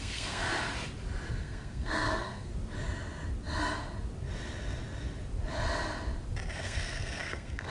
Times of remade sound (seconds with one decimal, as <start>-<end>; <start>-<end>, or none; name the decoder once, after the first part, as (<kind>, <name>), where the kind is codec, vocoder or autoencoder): 0.0-0.4 (codec, SNAC); 1.4-2.5; 6.5-7.7